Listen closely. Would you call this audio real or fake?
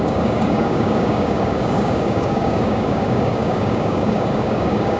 fake